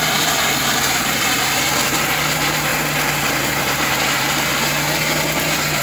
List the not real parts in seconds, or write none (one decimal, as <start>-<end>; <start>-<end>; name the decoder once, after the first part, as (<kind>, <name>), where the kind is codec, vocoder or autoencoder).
0.0-2.7 (vocoder, BigVGAN v2); 3.5-4.5